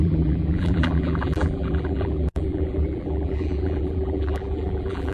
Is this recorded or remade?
remade